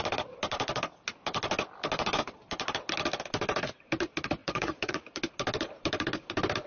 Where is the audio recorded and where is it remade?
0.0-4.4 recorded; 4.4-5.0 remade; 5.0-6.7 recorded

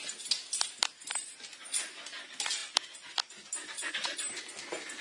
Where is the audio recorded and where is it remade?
0.0-5.0 recorded

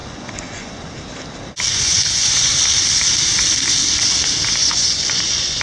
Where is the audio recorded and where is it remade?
0.0-0.9 remade; 0.9-1.7 recorded; 1.7-2.5 remade; 2.5-4.6 recorded; 4.6-5.6 remade

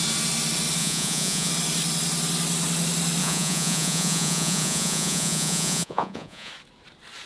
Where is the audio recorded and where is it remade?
0.0-0.8 recorded; 0.8-1.5 remade; 1.5-3.2 recorded; 3.2-6.5 remade; 6.5-7.3 recorded

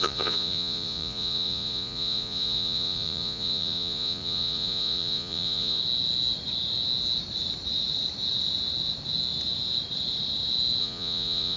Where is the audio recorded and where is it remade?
0.0-5.8 remade; 5.8-10.8 recorded; 10.8-11.6 remade

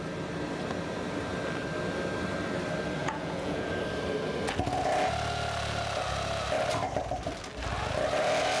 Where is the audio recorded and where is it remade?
0.0-3.0 recorded; 3.0-3.7 remade; 3.7-8.6 recorded

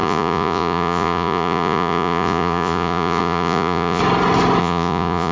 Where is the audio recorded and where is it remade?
0.0-4.0 remade; 4.0-4.6 recorded; 4.6-5.3 remade